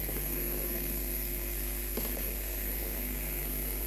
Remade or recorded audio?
remade